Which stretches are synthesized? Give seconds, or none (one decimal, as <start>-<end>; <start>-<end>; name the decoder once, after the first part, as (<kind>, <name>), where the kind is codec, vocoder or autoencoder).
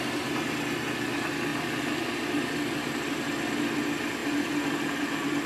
none